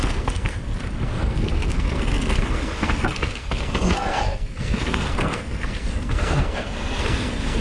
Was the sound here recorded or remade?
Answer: remade